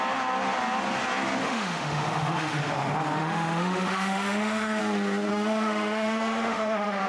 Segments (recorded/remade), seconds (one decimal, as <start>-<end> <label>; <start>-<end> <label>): 0.0-1.4 recorded; 1.4-2.6 remade; 2.6-3.2 recorded; 3.2-4.8 remade; 4.8-5.3 recorded; 5.3-7.1 remade